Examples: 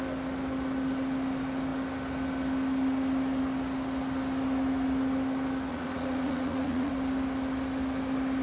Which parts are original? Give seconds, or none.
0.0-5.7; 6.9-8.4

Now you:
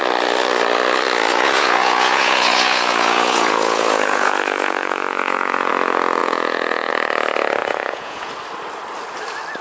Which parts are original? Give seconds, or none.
0.0-1.3; 5.7-6.2; 6.9-7.6; 8.3-9.6